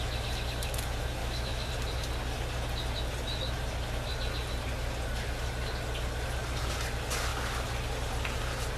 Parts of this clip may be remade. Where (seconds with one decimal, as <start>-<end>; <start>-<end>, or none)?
1.2-1.7